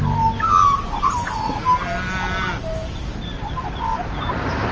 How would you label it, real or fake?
real